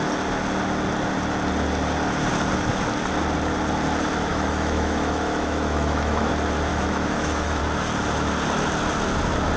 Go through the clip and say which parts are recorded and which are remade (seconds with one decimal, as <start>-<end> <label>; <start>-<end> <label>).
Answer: 0.0-4.3 recorded; 4.3-6.3 remade; 6.3-6.7 recorded; 6.7-7.6 remade; 7.6-9.6 recorded

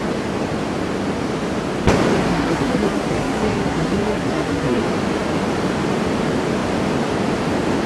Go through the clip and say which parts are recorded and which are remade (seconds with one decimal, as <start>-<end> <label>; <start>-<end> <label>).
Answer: 0.0-2.3 recorded; 2.3-4.8 remade; 4.8-7.9 recorded